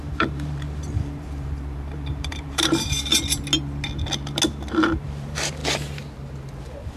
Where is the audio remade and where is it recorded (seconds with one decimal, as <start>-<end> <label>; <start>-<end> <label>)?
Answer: 0.0-3.1 remade; 3.1-4.7 recorded; 4.7-5.6 remade; 5.6-6.6 recorded; 6.6-7.0 remade